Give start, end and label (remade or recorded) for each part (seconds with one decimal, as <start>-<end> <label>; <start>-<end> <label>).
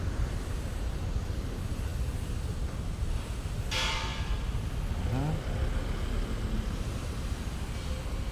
0.0-8.3 recorded